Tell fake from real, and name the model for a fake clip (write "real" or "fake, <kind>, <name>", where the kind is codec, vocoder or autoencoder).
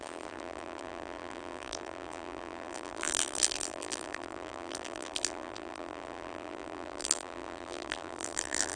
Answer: fake, vocoder, BigVGAN v2